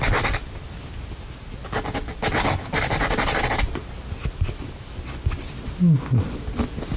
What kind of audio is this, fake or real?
real